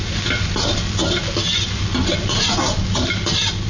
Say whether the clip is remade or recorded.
recorded